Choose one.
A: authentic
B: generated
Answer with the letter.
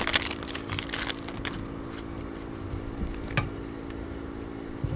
A